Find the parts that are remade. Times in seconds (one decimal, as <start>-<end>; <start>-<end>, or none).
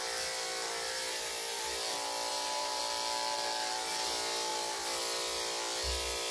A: 2.3-2.8